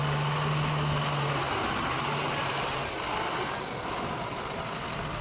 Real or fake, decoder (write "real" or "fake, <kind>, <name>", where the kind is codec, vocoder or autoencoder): real